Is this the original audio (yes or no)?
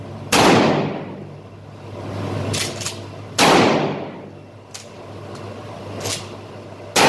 yes